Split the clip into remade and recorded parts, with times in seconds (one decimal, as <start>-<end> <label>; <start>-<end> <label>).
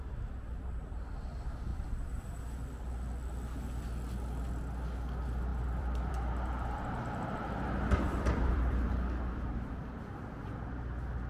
0.0-5.5 recorded; 5.5-6.1 remade; 6.1-8.1 recorded; 8.1-8.9 remade; 8.9-11.3 recorded